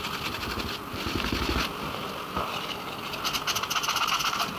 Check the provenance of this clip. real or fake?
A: real